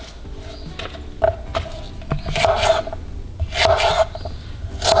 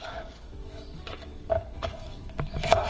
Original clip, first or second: first